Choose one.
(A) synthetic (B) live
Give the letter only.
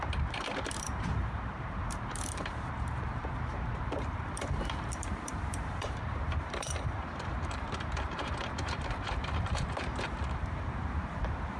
A